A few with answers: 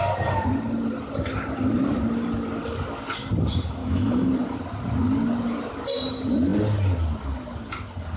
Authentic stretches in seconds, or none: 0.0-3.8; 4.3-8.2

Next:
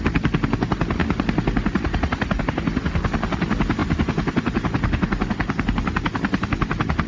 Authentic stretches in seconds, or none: 0.0-7.1